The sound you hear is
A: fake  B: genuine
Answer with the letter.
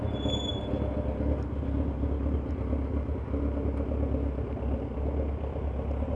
B